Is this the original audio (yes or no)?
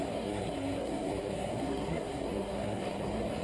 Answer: no